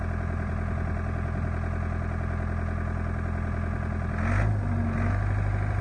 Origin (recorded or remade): recorded